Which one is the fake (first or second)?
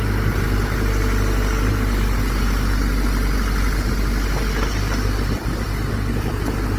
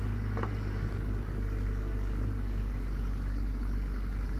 second